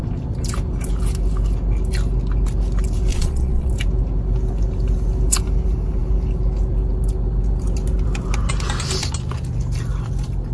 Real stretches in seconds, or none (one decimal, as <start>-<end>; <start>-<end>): 0.0-3.1; 3.7-10.5